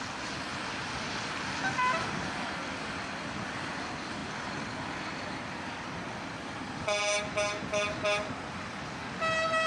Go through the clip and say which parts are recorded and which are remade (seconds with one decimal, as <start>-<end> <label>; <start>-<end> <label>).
0.0-9.7 recorded

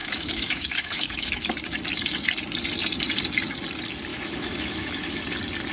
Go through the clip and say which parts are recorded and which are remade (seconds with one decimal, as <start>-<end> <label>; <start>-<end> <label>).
0.0-1.5 remade; 1.5-4.1 recorded; 4.1-5.2 remade; 5.2-5.7 recorded

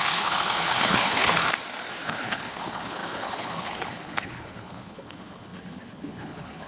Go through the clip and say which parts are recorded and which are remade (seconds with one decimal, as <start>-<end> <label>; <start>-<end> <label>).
0.0-1.4 remade; 1.4-1.9 recorded; 1.9-6.7 remade

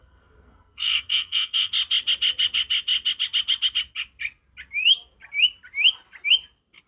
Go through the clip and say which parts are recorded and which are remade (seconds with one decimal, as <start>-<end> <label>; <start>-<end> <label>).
0.0-1.7 remade; 1.7-6.9 recorded

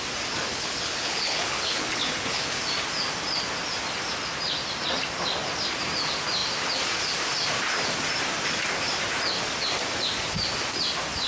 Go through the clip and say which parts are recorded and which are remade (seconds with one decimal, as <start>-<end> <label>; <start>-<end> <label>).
0.0-0.5 recorded; 0.5-2.6 remade; 2.6-11.3 recorded

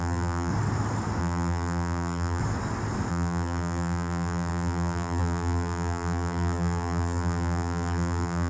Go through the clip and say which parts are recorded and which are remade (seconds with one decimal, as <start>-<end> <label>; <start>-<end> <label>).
0.0-0.5 remade; 0.5-1.2 recorded; 1.2-2.4 remade; 2.4-3.1 recorded; 3.1-8.5 remade

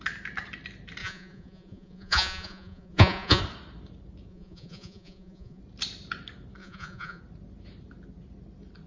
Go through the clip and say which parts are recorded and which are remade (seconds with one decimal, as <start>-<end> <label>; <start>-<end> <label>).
0.0-1.0 recorded; 1.0-3.4 remade; 3.4-4.3 recorded; 4.3-5.6 remade; 5.6-6.6 recorded; 6.6-7.2 remade; 7.2-8.9 recorded